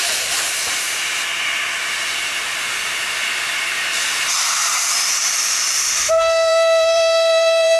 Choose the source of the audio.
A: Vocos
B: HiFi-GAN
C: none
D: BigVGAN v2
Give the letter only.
D